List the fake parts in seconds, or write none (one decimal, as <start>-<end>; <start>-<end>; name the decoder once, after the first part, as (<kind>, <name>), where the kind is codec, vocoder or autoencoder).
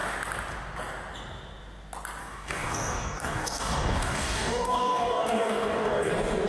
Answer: 2.2-6.1 (codec, DAC)